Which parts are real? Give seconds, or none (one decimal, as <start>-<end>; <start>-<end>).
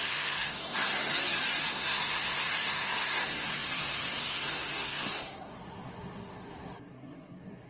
1.1-1.7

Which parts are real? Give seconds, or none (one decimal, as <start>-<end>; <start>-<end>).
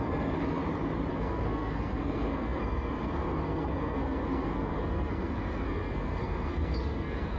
0.6-1.1